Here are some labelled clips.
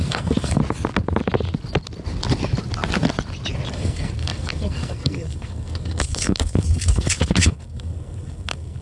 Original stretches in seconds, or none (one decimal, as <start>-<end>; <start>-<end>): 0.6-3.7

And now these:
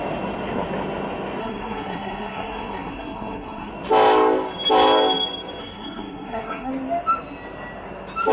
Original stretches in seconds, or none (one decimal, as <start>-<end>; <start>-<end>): 0.0-1.4; 3.7-5.6; 6.7-8.3

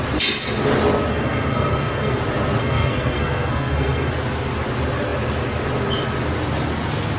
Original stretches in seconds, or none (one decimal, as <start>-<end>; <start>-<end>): 0.0-1.1; 2.2-2.6; 4.1-7.2

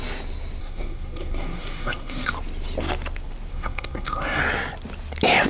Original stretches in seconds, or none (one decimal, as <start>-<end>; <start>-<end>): 0.0-0.6; 2.3-3.5; 4.4-5.5

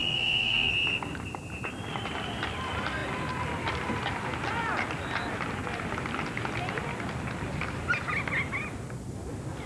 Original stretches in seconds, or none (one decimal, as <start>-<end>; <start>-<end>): 0.7-9.7

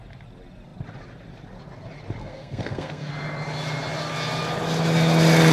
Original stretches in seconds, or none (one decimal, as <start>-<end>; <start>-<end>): 0.0-2.2; 3.1-5.5

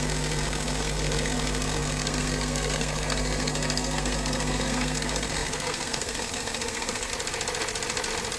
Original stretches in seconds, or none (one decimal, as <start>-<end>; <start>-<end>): 7.1-8.4

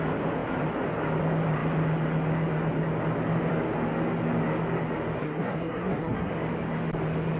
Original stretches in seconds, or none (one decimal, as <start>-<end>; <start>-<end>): 0.0-5.2; 6.3-7.4